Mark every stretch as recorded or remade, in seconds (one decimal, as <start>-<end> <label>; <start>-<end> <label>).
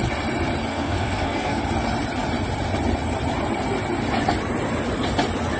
0.0-0.7 recorded; 0.7-1.6 remade; 1.6-5.6 recorded